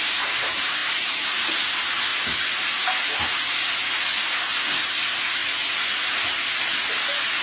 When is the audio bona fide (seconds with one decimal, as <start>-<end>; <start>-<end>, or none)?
0.0-7.4